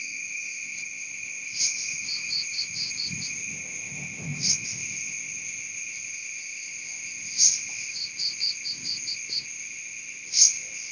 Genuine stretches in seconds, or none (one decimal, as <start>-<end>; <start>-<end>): none